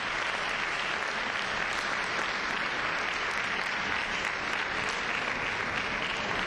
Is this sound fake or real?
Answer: real